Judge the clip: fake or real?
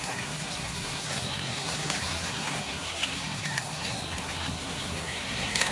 fake